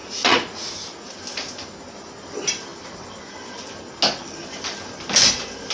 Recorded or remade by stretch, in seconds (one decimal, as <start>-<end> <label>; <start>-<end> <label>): 0.0-0.7 remade; 0.7-5.7 recorded